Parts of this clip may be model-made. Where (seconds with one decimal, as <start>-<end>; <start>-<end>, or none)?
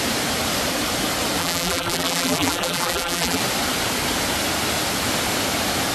1.4-3.4